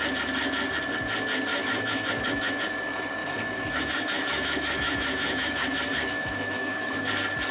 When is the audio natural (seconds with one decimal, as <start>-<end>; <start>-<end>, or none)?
0.0-1.5; 2.6-3.2; 7.1-7.5